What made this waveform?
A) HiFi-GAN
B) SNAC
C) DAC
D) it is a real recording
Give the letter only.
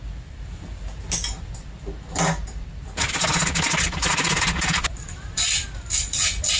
D